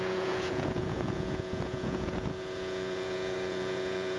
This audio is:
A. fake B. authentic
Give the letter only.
A